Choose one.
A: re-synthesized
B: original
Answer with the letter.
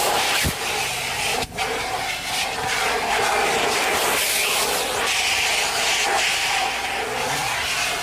B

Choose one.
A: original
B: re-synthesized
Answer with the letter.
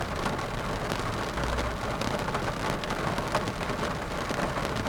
A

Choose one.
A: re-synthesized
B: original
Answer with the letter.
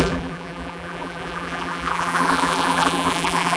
A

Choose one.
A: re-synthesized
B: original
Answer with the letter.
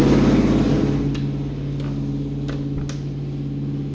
B